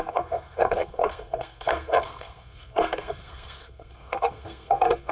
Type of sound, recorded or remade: remade